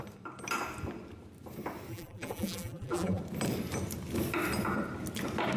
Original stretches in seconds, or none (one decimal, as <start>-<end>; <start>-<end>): 0.0-1.9; 3.2-5.6